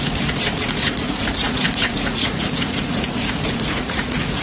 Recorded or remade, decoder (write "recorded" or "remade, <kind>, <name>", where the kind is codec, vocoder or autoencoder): remade, vocoder, Vocos